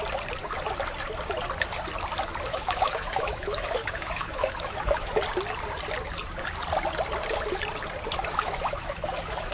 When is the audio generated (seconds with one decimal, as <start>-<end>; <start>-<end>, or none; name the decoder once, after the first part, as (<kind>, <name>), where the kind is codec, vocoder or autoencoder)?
2.5-5.1 (autoencoder, DAC-VAE); 8.3-9.5